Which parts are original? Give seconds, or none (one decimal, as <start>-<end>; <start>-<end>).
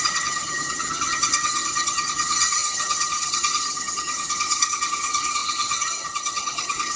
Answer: none